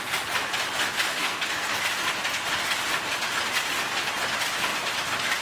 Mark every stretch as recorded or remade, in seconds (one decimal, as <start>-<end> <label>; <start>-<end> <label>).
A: 0.0-1.1 recorded; 1.1-1.8 remade; 1.8-5.4 recorded